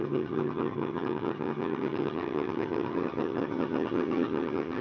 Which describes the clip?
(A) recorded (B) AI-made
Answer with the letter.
B